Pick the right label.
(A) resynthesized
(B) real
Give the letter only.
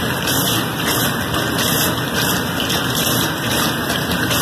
A